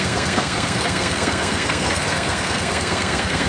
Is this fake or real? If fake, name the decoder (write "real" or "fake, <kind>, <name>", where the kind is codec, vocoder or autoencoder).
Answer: fake, codec, SNAC